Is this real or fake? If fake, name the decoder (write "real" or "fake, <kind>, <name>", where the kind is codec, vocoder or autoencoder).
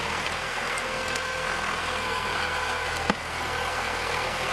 fake, codec, SNAC